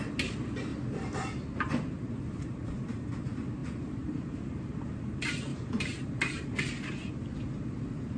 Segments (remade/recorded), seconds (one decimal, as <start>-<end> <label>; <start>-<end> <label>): 0.0-3.6 recorded; 3.6-5.0 remade; 5.0-5.5 recorded; 5.5-6.7 remade; 6.7-8.2 recorded